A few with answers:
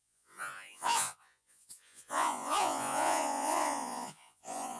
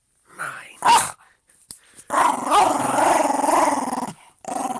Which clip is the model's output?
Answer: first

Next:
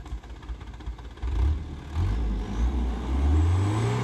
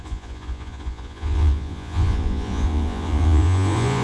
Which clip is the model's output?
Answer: second